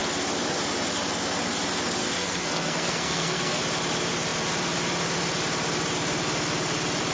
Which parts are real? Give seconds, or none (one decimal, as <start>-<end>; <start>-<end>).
0.0-2.0; 3.6-7.1